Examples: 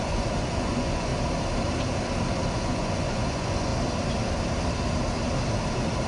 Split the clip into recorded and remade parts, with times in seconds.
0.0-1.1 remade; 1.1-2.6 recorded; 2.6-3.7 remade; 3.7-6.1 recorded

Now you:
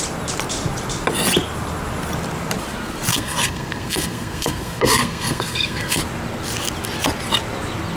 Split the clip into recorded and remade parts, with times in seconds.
0.0-3.1 recorded; 3.1-6.0 remade; 6.0-8.0 recorded

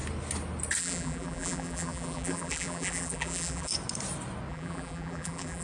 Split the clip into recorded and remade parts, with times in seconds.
0.0-0.8 recorded; 0.8-3.7 remade; 3.7-4.5 recorded; 4.5-5.6 remade

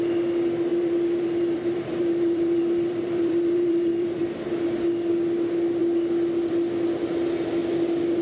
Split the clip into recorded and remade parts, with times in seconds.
0.0-0.7 recorded; 0.7-4.2 remade; 4.2-8.2 recorded

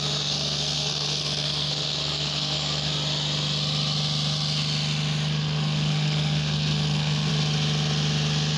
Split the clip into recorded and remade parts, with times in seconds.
0.0-2.9 remade; 2.9-5.3 recorded; 5.3-7.3 remade; 7.3-8.6 recorded

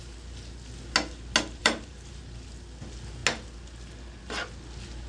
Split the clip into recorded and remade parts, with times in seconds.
0.0-1.6 recorded; 1.6-2.2 remade; 2.2-5.1 recorded

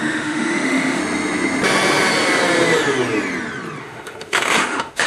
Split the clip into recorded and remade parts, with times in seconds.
0.0-1.0 remade; 1.0-3.8 recorded; 3.8-5.1 remade